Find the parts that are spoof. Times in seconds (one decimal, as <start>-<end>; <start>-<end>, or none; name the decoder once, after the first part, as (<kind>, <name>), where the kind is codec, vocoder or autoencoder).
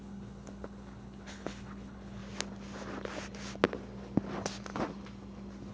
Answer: 0.0-2.2 (codec, HILCodec)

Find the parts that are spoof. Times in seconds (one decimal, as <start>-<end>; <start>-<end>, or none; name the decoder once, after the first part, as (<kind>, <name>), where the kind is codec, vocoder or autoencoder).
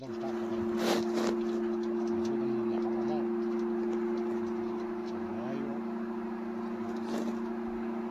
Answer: none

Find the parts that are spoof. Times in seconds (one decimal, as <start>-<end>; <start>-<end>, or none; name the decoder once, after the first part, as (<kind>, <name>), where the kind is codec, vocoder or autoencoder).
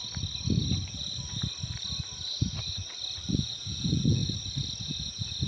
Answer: 3.3-4.2 (vocoder, Vocos); 4.8-5.5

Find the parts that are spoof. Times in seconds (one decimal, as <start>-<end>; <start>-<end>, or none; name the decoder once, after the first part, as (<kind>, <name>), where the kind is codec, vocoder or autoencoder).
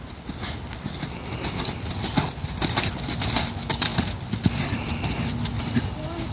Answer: none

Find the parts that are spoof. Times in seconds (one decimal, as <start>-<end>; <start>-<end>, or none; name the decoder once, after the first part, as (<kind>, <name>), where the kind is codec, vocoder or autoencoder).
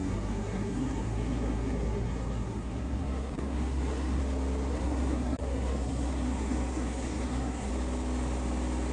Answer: 0.0-4.2 (codec, SNAC); 4.7-7.7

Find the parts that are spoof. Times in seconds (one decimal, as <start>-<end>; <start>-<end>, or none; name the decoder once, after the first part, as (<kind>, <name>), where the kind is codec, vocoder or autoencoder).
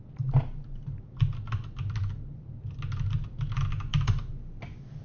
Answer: none